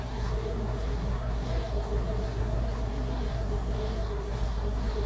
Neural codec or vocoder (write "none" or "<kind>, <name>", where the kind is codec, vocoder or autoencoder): codec, SNAC